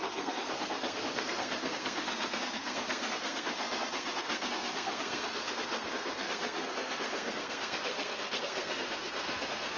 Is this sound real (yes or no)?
no